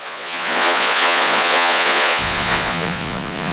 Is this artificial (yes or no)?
yes